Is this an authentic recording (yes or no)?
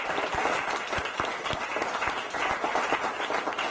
yes